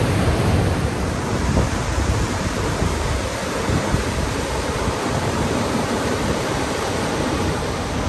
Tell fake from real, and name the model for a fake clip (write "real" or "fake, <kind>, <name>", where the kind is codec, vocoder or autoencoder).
fake, vocoder, BigVGAN v2